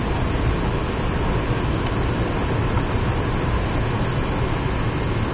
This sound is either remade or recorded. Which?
recorded